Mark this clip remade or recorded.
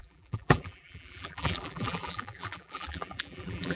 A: remade